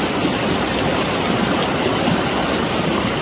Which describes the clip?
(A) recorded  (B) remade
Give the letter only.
A